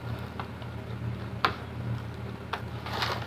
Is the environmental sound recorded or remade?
recorded